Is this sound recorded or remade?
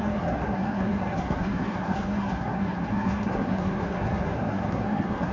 remade